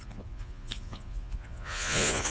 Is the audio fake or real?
fake